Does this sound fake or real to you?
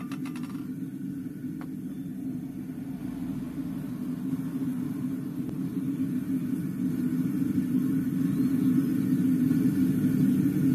real